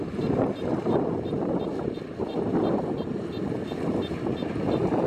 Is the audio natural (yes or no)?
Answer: yes